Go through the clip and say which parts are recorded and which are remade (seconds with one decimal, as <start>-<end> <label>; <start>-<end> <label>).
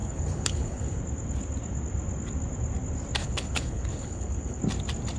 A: 0.0-1.0 remade; 1.0-3.2 recorded; 3.2-4.6 remade; 4.6-5.2 recorded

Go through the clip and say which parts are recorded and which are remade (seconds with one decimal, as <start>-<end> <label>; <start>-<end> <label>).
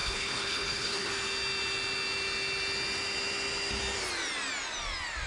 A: 0.0-1.1 remade; 1.1-5.3 recorded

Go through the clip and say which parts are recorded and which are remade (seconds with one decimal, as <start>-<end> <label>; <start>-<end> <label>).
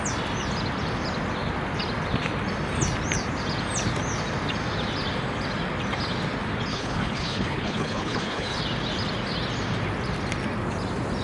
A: 0.0-6.7 recorded; 6.7-8.6 remade; 8.6-11.2 recorded